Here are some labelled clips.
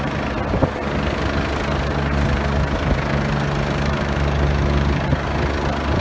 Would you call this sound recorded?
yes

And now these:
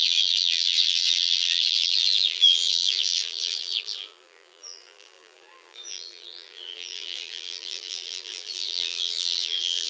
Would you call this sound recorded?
no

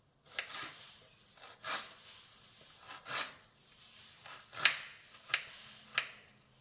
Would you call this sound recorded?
yes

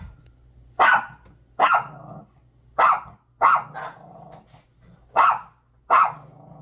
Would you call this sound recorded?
yes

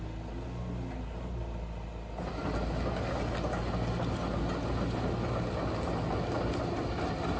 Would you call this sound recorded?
yes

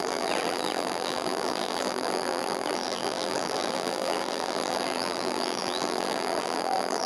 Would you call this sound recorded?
no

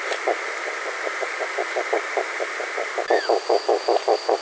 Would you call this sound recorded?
yes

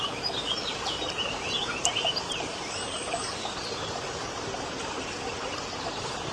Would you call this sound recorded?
no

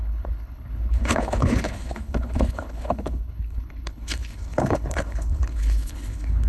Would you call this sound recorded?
no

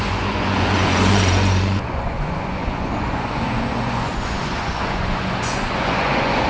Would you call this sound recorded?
no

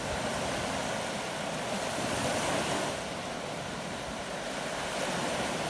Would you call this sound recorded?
yes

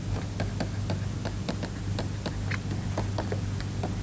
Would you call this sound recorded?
yes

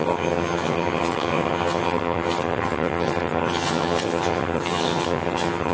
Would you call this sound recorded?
no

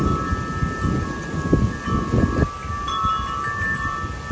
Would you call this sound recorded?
yes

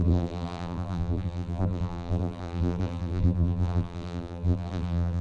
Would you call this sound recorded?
no